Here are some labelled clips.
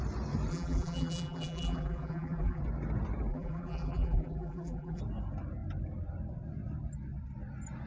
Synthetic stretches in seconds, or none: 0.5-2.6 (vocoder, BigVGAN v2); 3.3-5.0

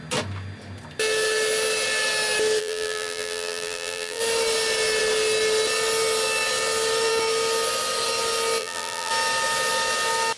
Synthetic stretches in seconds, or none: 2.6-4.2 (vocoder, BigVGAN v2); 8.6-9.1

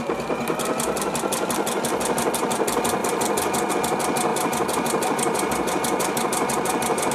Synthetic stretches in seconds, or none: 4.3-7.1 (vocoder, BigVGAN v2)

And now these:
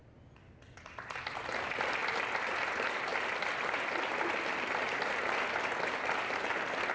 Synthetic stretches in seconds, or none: 2.0-2.7 (vocoder, BigVGAN v2); 3.1-4.1

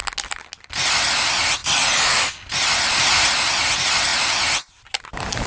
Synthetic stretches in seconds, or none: 0.6-1.6 (vocoder, BigVGAN v2); 2.8-4.1; 5.0-5.5